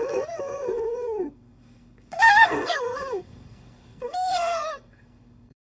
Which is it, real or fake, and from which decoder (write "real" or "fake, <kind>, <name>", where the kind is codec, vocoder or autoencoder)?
fake, codec, SNAC